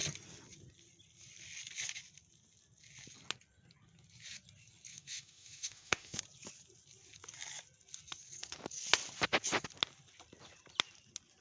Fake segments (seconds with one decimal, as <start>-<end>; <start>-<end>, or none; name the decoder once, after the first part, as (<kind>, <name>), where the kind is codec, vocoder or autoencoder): 4.9-6.2 (autoencoder, DAC-VAE)